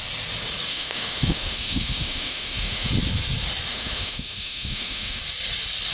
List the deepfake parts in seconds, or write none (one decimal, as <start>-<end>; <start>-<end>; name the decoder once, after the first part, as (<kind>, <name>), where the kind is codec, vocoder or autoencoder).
0.7-2.9 (autoencoder, DAC-VAE); 3.7-5.2